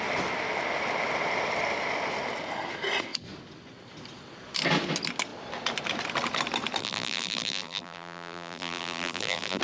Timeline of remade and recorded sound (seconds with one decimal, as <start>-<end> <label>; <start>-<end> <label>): 0.0-6.8 recorded; 6.8-9.6 remade